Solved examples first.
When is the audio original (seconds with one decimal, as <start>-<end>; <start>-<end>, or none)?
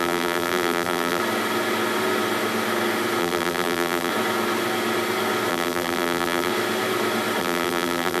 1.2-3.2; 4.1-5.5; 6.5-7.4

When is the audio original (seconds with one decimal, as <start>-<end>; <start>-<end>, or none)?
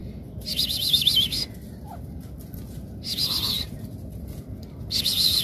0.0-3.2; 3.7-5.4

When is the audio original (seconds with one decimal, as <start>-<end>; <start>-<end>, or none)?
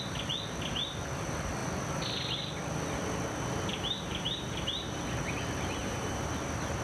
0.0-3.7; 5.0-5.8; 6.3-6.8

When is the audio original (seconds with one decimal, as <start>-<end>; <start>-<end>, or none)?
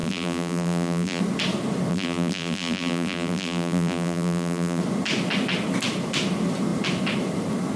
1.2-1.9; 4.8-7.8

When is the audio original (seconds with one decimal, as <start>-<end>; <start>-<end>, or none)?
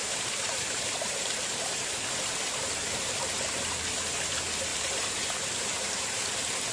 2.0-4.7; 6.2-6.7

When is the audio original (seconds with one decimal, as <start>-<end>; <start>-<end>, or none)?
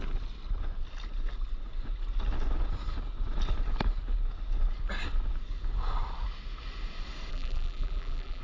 0.0-7.3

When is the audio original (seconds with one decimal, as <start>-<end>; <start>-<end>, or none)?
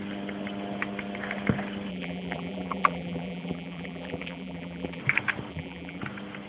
0.0-1.9; 5.0-5.5; 6.0-6.5